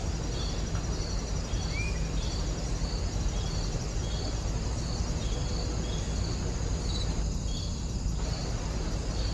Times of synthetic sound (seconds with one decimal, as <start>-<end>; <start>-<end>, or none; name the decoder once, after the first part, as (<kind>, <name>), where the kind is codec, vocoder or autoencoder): 7.7-8.4 (vocoder, BigVGAN v2)